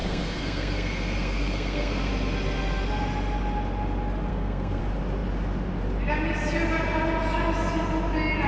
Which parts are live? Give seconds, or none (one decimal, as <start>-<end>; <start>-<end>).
2.1-4.3; 4.8-8.5